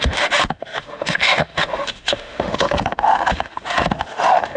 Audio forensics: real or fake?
fake